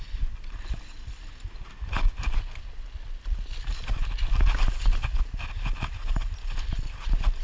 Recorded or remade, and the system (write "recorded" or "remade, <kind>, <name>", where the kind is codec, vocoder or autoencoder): recorded